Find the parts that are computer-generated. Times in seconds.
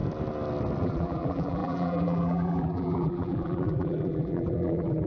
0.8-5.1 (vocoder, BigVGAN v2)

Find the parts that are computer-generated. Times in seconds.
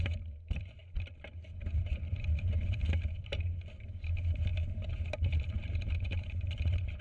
0.0-7.0 (vocoder, BigVGAN v2)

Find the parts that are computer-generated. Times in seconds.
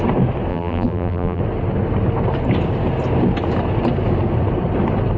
0.5-1.4 (vocoder, BigVGAN v2)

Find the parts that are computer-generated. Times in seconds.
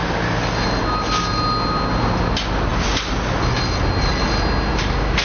none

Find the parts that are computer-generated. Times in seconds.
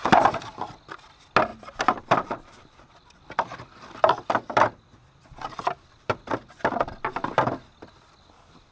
1.5-6.6 (vocoder, BigVGAN v2)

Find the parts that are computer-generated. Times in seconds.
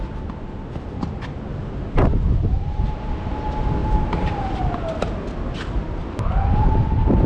1.5-3.1 (vocoder, BigVGAN v2); 3.8-4.8